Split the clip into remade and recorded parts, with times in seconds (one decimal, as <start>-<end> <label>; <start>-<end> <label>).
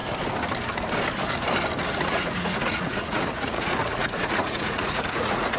0.0-1.9 recorded; 1.9-5.6 remade